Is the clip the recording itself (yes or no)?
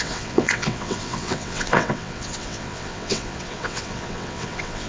no